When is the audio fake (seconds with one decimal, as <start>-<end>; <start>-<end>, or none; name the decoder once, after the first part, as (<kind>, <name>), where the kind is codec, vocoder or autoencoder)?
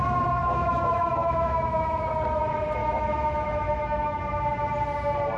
0.4-2.1 (autoencoder, DAC-VAE); 2.8-4.2